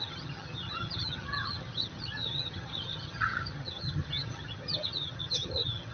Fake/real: fake